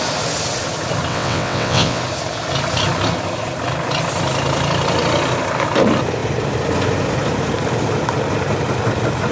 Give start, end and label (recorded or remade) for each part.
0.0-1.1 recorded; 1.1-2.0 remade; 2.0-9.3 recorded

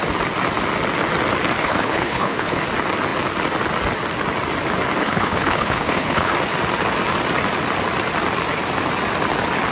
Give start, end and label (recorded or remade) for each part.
0.0-1.6 recorded; 1.6-2.6 remade; 2.6-5.0 recorded; 5.0-6.3 remade; 6.3-9.7 recorded

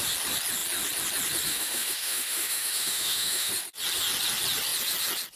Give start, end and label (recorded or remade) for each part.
0.0-1.5 recorded; 1.5-3.5 remade; 3.5-5.4 recorded

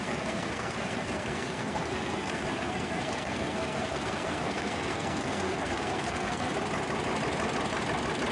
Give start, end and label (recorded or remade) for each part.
0.0-6.5 remade; 6.5-8.3 recorded

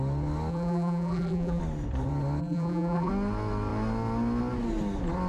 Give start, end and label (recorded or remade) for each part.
0.0-0.5 recorded; 0.5-1.6 remade; 1.6-2.4 recorded; 2.4-3.1 remade; 3.1-5.3 recorded